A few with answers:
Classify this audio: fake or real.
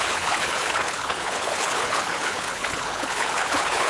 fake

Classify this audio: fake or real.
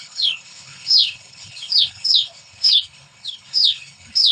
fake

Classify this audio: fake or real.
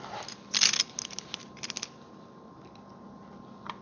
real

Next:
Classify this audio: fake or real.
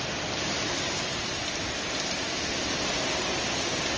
real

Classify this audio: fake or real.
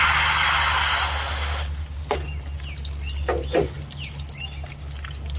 real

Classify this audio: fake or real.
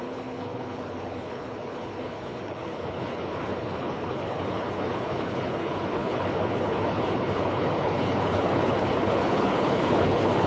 fake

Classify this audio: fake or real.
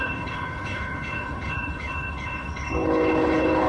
fake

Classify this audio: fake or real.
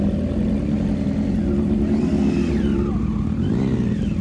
real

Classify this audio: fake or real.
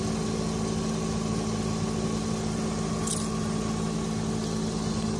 real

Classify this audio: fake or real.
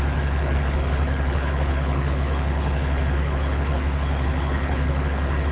fake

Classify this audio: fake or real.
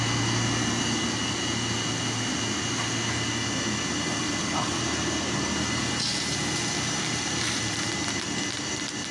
real